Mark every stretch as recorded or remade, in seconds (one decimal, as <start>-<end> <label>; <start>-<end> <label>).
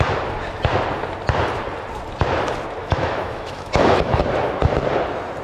0.0-2.8 recorded; 2.8-4.2 remade; 4.2-5.4 recorded